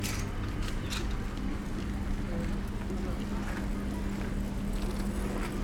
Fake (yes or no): no